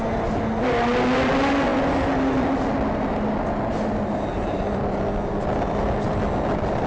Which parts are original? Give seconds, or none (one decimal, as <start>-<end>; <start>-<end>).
0.0-6.9